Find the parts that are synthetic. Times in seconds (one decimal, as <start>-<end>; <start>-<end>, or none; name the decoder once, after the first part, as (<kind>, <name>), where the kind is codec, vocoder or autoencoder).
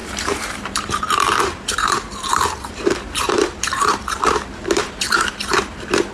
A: 0.0-6.1 (vocoder, BigVGAN v2)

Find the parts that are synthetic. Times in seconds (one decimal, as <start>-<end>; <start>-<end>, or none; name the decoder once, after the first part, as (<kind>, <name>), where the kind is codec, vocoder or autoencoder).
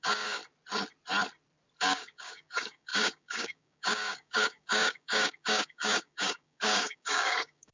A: 0.0-0.4 (codec, DAC); 1.8-7.7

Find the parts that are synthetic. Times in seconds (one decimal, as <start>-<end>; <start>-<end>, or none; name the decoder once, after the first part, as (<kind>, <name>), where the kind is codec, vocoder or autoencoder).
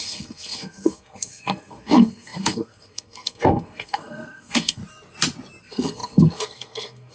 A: 0.0-4.8 (codec, SNAC); 5.6-7.1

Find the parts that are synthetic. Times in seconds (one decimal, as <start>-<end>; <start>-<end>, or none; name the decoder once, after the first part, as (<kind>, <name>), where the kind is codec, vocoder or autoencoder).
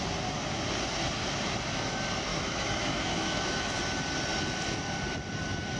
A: 2.3-3.8 (autoencoder, DAC-VAE)